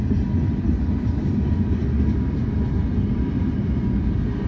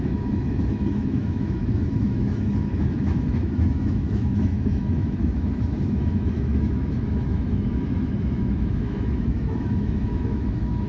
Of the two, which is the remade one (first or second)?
second